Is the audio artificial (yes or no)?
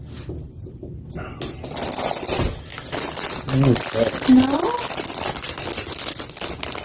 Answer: no